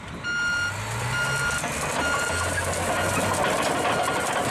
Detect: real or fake real